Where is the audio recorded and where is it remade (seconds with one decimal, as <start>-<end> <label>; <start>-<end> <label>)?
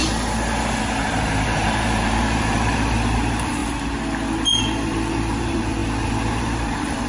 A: 0.0-3.6 remade; 3.6-4.6 recorded; 4.6-5.8 remade; 5.8-6.4 recorded; 6.4-7.1 remade